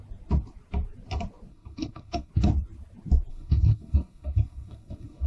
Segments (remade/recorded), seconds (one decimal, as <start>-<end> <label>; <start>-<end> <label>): 0.0-1.5 recorded; 1.5-2.3 remade; 2.3-3.3 recorded; 3.3-5.3 remade